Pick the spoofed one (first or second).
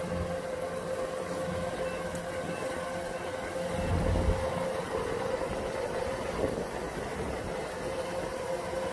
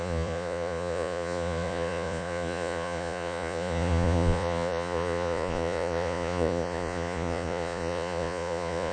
second